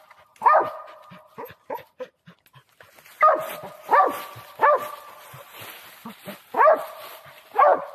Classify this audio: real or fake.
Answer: real